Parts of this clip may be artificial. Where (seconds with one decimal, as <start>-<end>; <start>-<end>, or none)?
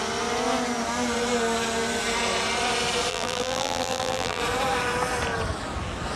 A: 3.1-4.4